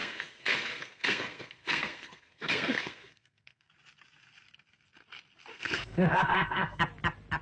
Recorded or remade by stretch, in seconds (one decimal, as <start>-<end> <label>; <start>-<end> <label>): 0.0-3.7 remade; 3.7-5.5 recorded; 5.5-6.8 remade; 6.8-7.4 recorded